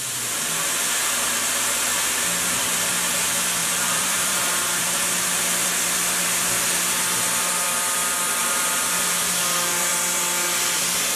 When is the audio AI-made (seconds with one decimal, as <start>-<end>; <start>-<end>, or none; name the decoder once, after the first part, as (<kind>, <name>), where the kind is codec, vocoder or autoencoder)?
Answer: 3.6-5.4 (vocoder, BigVGAN v2); 8.4-9.9